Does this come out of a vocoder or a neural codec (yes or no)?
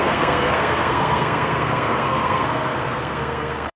yes